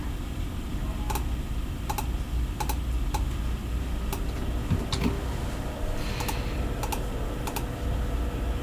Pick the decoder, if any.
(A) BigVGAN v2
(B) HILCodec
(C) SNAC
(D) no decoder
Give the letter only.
D